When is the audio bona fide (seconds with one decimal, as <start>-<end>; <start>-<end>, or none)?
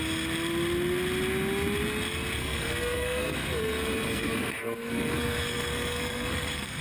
0.0-2.4